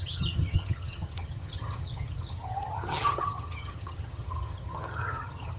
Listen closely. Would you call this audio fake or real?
fake